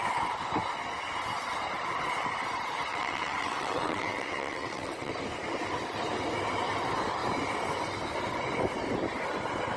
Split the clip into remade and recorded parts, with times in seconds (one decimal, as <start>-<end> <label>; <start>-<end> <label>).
0.0-2.9 recorded; 2.9-5.1 remade; 5.1-9.8 recorded